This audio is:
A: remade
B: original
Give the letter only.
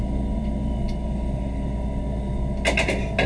B